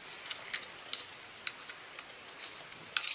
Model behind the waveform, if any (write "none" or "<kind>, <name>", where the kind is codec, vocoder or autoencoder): none